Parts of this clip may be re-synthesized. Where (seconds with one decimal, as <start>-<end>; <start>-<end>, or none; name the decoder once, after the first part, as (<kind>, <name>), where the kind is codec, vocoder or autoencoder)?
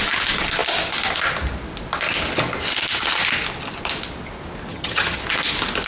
4.7-5.2 (vocoder, HiFi-GAN)